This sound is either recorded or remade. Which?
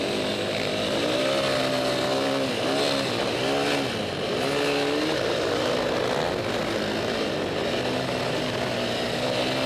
recorded